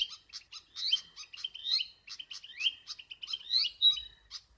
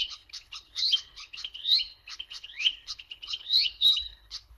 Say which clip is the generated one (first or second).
second